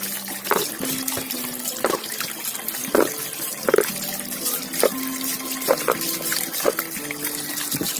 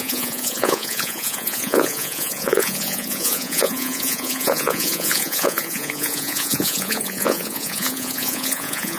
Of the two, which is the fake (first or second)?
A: second